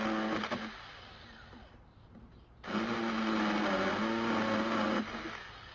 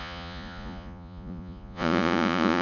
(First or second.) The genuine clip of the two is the first